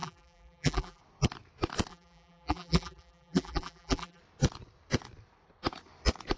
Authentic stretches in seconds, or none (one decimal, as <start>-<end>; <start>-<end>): 1.0-1.9; 4.2-6.4